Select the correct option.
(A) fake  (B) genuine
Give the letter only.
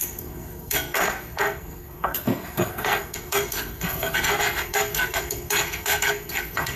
A